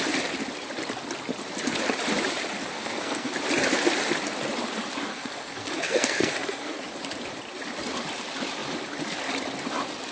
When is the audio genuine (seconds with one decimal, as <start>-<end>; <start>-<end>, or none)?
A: 0.0-2.7; 3.3-5.1; 6.8-10.1